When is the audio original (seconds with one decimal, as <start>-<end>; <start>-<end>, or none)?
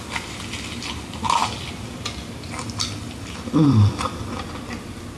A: 0.0-1.4; 4.5-5.2